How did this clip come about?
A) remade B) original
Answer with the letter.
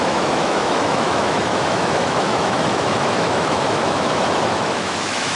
A